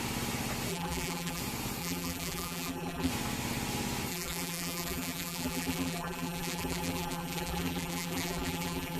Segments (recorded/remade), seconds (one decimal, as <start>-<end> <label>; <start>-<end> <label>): 0.0-0.7 recorded; 0.7-1.4 remade; 1.4-1.8 recorded; 1.8-3.1 remade; 3.1-4.1 recorded; 4.1-9.0 remade